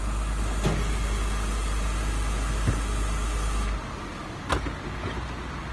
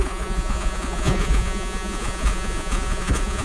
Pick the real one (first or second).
first